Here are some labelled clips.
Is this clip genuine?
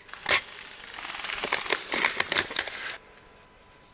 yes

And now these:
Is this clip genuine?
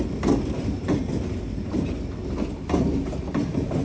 yes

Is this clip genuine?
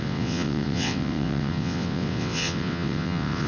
no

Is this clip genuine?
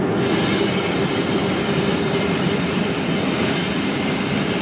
yes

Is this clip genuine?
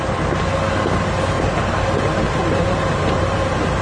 yes